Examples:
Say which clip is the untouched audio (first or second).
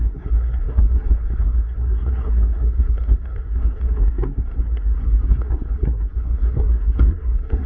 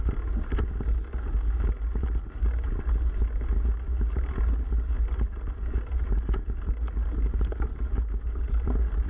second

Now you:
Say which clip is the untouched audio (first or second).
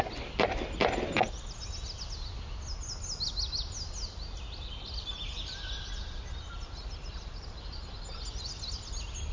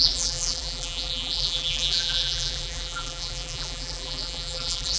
first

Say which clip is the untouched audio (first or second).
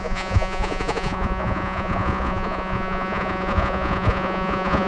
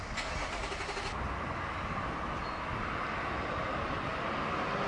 second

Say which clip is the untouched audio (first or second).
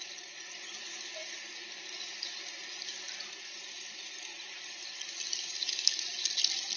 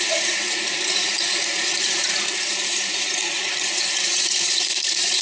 first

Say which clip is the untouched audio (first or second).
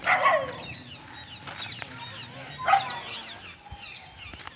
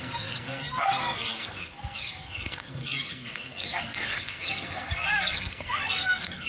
first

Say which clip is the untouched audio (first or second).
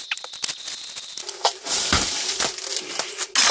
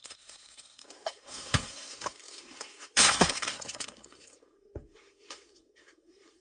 first